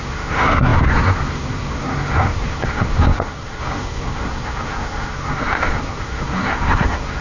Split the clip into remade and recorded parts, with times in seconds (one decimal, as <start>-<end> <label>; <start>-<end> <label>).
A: 0.0-7.2 remade

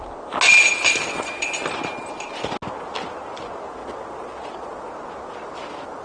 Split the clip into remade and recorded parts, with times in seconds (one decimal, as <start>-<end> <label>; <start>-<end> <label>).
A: 0.0-0.9 recorded; 0.9-1.5 remade; 1.5-3.8 recorded; 3.8-4.9 remade; 4.9-6.0 recorded

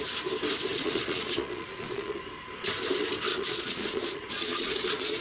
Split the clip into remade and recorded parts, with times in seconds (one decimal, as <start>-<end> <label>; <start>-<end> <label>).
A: 0.0-0.7 recorded; 0.7-2.2 remade; 2.2-3.3 recorded; 3.3-5.2 remade